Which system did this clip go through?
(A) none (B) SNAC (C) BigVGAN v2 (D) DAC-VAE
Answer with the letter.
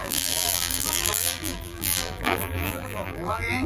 C